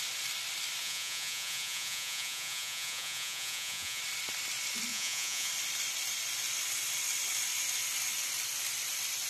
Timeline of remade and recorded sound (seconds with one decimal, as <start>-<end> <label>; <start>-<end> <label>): 0.0-0.8 recorded; 0.8-4.0 remade; 4.0-4.9 recorded; 4.9-5.5 remade; 5.5-9.3 recorded